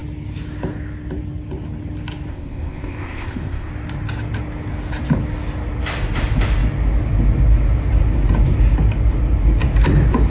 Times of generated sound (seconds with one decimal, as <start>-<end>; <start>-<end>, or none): 2.3-3.7